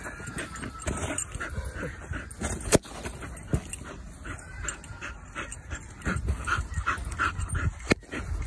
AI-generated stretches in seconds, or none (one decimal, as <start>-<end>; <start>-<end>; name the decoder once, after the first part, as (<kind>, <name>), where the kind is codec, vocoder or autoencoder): none